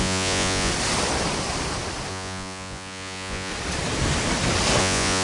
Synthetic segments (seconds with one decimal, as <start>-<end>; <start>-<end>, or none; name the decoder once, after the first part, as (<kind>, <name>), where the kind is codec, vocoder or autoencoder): 0.0-0.7 (vocoder, Vocos); 2.1-3.5; 4.8-5.2